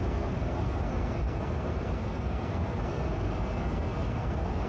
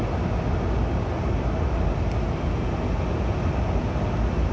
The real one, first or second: second